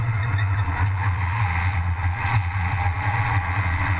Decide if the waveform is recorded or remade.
remade